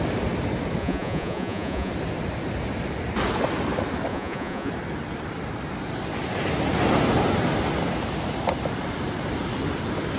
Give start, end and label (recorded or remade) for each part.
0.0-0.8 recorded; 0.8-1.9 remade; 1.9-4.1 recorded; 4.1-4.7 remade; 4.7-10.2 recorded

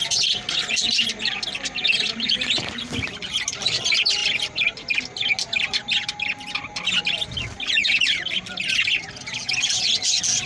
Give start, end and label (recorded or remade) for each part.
0.0-4.2 recorded; 4.2-5.0 remade; 5.0-5.4 recorded; 5.4-7.1 remade; 7.1-10.5 recorded

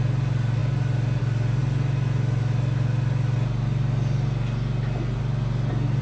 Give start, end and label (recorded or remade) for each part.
0.0-6.0 recorded

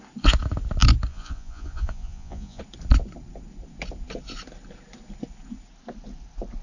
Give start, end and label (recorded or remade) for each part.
0.0-1.1 recorded; 1.1-2.6 remade; 2.6-6.6 recorded

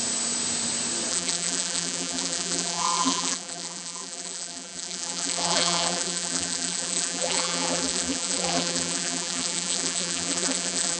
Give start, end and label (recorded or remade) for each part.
0.0-1.1 recorded; 1.1-11.0 remade